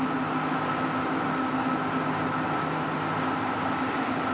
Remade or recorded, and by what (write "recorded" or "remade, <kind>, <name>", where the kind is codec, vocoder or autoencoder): recorded